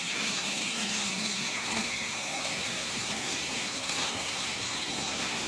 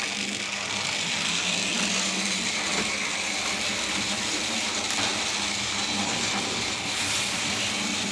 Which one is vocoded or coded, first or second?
first